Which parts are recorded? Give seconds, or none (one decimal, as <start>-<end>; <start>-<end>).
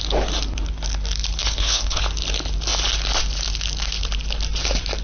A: 0.0-1.4; 2.0-5.0